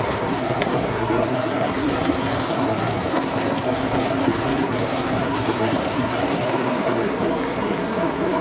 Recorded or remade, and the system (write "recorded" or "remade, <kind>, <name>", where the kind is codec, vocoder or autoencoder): remade, codec, SNAC